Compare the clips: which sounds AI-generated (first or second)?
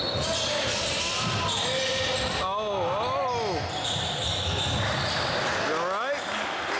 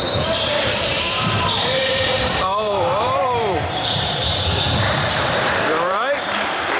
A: second